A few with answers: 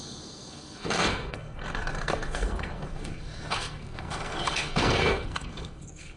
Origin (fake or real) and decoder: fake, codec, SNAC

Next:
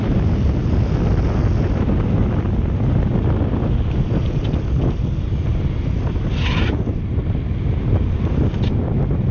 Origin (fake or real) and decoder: real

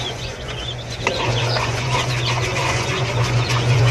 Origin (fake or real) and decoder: fake, vocoder, Vocos